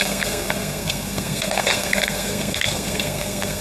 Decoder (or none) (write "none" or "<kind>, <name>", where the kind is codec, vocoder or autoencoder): codec, SNAC